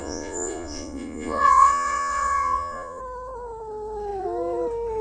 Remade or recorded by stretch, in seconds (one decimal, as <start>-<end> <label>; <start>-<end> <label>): 0.0-3.0 remade; 3.0-5.0 recorded